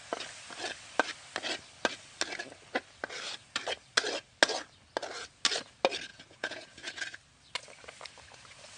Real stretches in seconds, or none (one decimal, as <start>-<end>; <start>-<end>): 0.0-6.1; 6.9-8.8